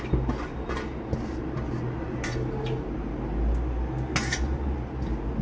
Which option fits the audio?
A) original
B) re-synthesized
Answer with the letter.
A